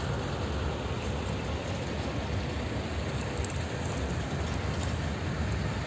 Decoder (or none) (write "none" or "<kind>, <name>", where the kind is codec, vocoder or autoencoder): none